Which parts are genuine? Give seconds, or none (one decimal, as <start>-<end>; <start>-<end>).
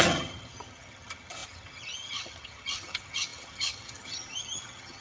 none